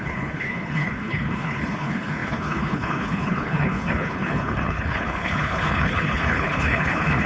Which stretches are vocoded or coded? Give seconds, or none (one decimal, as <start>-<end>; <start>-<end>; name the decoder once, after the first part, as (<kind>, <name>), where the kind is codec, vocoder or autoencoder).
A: 0.0-7.3 (codec, HILCodec)